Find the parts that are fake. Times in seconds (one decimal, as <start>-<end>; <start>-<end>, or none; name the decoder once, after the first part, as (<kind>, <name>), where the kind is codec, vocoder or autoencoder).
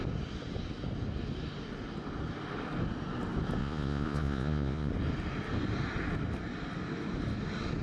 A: 3.6-4.9 (vocoder, Vocos)